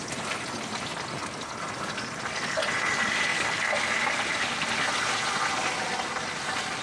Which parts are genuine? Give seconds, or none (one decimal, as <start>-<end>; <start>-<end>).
0.0-3.3; 4.4-6.8